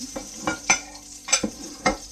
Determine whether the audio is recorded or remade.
remade